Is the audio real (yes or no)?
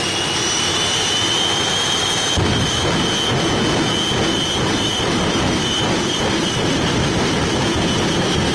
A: yes